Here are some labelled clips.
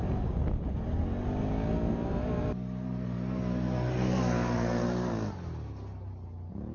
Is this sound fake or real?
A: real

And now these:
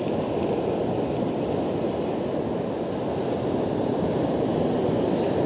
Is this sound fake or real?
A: real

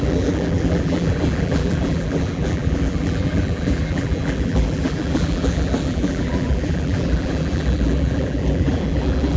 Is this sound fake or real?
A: fake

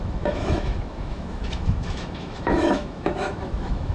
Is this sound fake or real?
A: fake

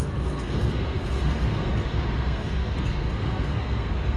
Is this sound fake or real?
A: fake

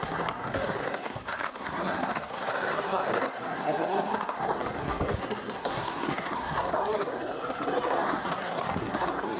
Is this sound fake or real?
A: fake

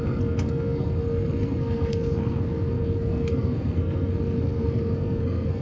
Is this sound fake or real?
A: fake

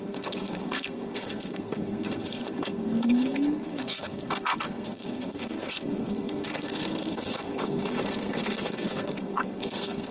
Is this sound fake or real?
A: fake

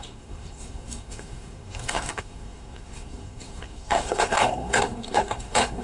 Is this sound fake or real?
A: fake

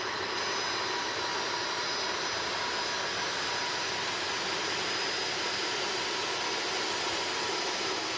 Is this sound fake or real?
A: real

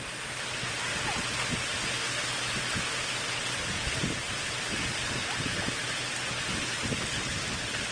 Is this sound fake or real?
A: real